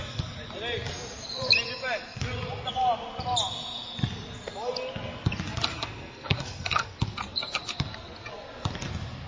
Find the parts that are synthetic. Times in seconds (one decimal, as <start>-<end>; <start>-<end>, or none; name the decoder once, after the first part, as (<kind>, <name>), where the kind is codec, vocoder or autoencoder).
5.7-6.9 (codec, SNAC)